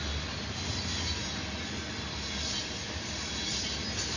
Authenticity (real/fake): real